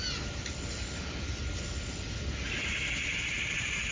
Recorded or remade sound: recorded